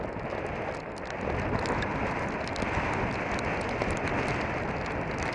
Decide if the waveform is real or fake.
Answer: real